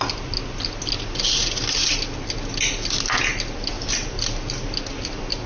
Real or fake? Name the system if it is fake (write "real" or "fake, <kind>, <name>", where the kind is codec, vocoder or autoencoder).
real